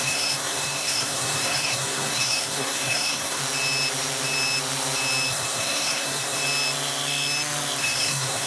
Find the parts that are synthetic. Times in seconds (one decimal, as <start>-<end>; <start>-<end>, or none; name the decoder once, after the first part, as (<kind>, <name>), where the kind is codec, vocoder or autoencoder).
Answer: 0.0-3.4 (codec, SNAC); 5.3-6.4; 7.8-8.5